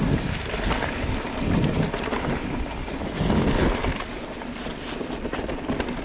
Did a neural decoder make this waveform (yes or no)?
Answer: no